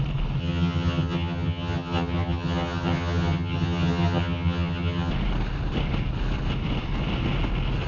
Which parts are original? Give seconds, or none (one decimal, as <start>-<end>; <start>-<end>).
0.0-0.4; 5.1-7.9